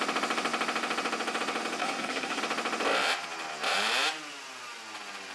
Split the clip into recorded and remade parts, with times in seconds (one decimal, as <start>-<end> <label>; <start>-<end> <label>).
0.0-1.8 recorded; 1.8-2.4 remade; 2.4-5.3 recorded